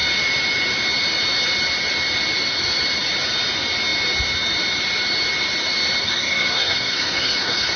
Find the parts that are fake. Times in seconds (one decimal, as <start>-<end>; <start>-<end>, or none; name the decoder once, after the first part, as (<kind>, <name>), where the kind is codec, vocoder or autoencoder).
6.0-7.8 (codec, SNAC)